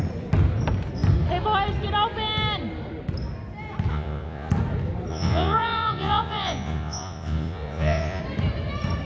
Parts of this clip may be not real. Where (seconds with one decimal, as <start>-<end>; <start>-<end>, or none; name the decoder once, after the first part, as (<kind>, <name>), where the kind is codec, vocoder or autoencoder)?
3.9-4.5 (vocoder, Vocos); 5.1-8.2